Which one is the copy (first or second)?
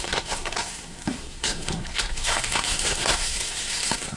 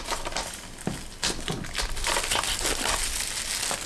first